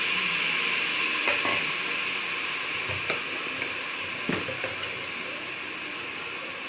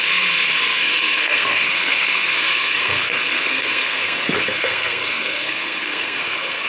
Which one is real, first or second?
first